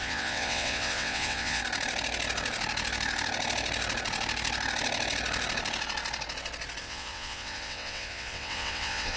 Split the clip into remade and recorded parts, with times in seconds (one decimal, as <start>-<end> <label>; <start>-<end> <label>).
0.0-1.6 remade; 1.6-6.8 recorded; 6.8-9.2 remade